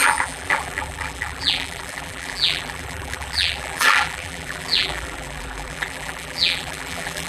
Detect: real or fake fake